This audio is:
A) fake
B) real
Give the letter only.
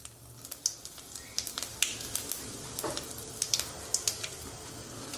B